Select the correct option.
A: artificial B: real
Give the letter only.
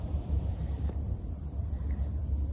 A